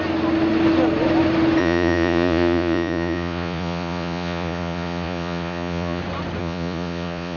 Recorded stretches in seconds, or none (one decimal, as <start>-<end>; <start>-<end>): 0.0-1.6; 6.0-6.4